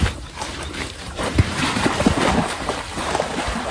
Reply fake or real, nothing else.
fake